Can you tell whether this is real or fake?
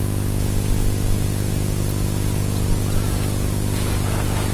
fake